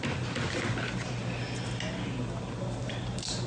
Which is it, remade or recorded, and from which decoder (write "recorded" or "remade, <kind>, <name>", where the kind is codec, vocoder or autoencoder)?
recorded